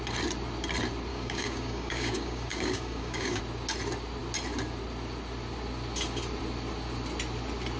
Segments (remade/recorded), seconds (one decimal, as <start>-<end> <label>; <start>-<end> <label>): 0.0-1.1 recorded; 1.1-3.4 remade; 3.4-7.8 recorded